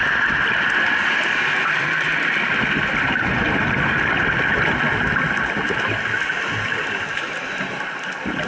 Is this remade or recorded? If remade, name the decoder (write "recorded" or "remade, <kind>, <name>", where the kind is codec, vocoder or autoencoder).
recorded